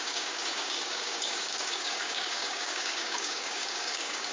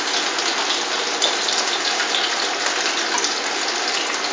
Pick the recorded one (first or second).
second